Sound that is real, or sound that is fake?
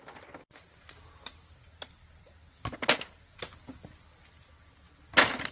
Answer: real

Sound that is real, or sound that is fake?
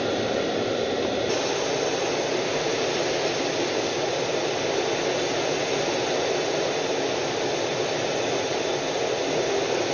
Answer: real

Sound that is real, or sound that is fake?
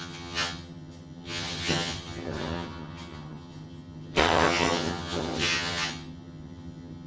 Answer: fake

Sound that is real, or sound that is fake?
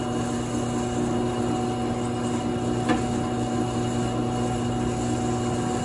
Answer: real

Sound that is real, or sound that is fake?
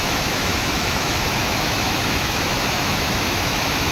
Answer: fake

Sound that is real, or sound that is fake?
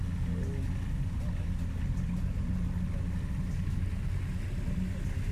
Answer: real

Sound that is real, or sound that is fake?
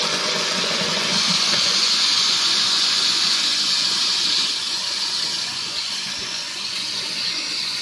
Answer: fake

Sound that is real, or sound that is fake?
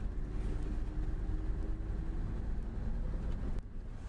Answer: real